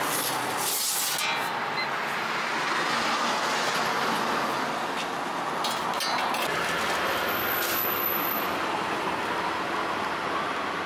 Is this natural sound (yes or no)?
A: yes